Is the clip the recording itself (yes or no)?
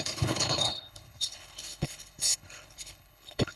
no